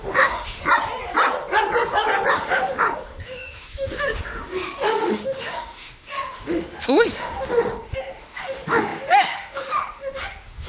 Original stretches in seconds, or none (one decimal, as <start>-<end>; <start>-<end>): 0.6-2.3